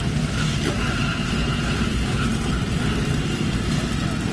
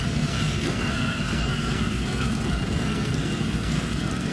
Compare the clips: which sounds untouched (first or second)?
first